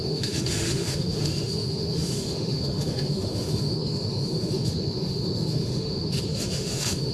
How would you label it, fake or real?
fake